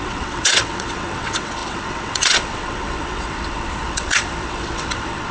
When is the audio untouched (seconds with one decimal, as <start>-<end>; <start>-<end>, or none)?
none